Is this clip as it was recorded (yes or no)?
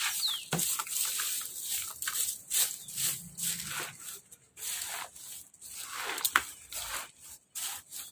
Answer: yes